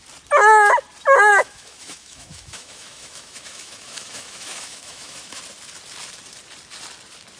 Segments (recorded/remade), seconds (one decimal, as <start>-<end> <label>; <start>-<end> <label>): 0.0-1.3 recorded; 1.3-5.4 remade; 5.4-7.4 recorded